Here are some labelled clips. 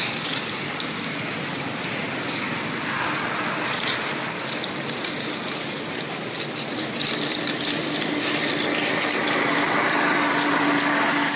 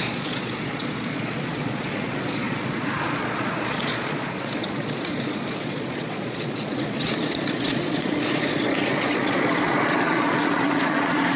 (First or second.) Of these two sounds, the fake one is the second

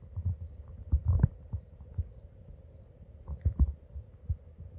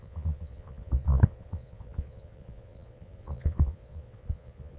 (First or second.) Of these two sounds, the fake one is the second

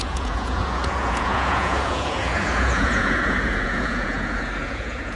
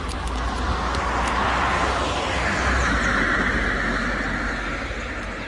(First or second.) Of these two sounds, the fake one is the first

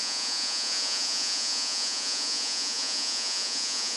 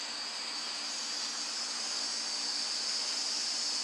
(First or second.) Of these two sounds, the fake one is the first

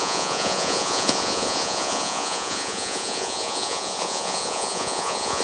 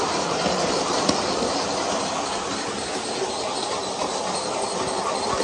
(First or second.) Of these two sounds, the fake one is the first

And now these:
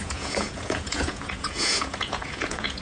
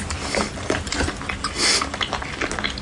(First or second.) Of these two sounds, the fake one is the first